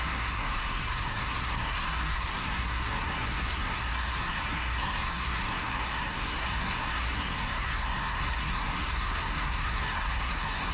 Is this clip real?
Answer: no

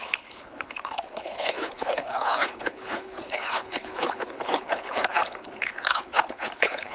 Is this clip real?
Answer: no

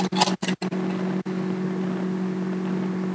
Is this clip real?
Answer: yes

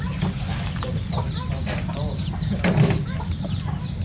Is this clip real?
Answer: yes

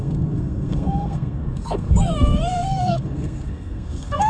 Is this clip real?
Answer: no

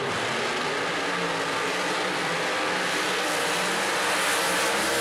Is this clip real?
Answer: yes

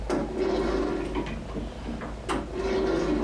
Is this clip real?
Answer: yes